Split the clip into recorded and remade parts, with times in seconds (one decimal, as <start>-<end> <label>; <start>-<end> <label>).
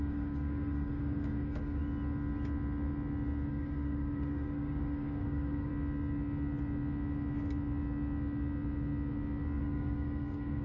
0.0-1.8 remade; 1.8-3.5 recorded; 3.5-5.7 remade; 5.7-9.6 recorded; 9.6-10.6 remade